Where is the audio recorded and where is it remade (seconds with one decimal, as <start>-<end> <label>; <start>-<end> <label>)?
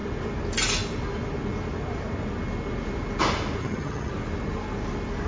0.0-3.6 recorded; 3.6-4.1 remade; 4.1-5.3 recorded